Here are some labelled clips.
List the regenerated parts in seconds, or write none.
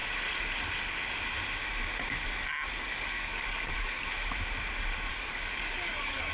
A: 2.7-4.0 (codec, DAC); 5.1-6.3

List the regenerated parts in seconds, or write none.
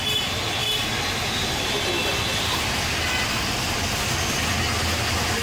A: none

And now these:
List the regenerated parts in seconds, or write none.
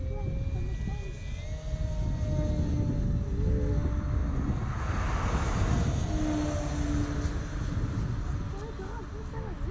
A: none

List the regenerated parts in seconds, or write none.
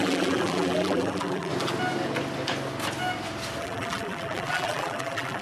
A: 0.0-1.5 (vocoder, BigVGAN v2); 3.6-5.4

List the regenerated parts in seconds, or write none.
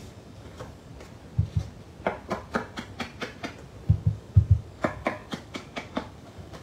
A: 0.0-0.9 (codec, DAC); 4.0-6.6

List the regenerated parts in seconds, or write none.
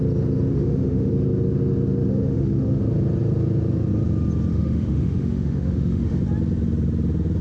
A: 0.5-1.1 (autoencoder, DAC-VAE); 2.1-2.8; 4.5-6.2